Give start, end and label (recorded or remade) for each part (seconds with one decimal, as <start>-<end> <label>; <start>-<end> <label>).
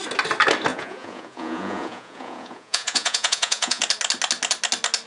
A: 0.0-0.7 recorded; 0.7-3.8 remade; 3.8-5.1 recorded